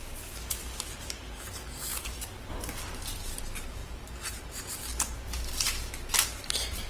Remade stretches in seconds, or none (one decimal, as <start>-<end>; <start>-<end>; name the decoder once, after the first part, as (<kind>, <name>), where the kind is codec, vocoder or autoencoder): 1.9-3.4 (vocoder, BigVGAN v2); 3.8-4.4; 4.9-5.5